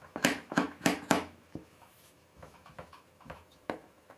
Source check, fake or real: fake